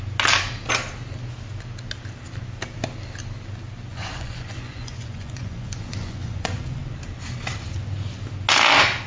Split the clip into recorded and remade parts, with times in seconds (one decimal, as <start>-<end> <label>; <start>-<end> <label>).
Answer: 0.0-3.9 recorded; 3.9-6.8 remade; 6.8-9.1 recorded